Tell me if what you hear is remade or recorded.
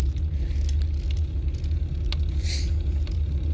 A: recorded